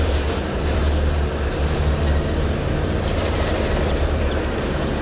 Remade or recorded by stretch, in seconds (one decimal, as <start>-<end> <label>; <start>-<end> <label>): 0.0-0.8 remade; 0.8-3.8 recorded; 3.8-5.0 remade